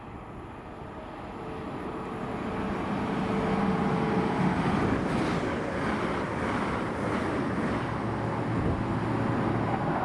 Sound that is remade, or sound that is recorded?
recorded